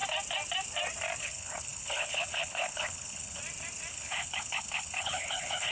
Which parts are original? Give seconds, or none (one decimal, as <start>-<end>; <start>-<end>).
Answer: 0.0-1.2; 3.4-3.9